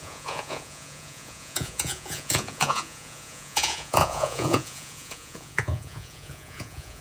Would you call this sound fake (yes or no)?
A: yes